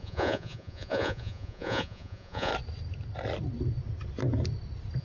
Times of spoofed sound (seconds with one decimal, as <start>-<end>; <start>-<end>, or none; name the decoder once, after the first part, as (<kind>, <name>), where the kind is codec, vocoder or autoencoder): 0.0-2.5 (vocoder, Vocos)